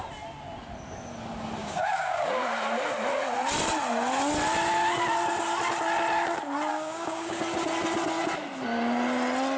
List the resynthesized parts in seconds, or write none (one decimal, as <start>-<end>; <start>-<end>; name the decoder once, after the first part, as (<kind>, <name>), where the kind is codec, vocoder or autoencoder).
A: 1.6-2.3 (codec, DAC); 6.7-7.4